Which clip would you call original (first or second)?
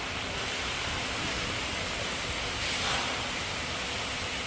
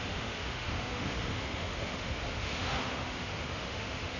first